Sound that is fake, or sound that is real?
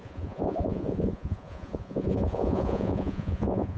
fake